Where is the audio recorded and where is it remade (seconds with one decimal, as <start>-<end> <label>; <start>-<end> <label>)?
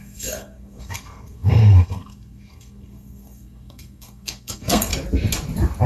0.0-4.9 remade; 4.9-5.9 recorded